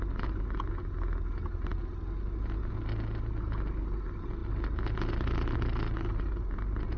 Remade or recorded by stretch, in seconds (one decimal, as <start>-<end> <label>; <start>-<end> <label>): 0.0-7.0 recorded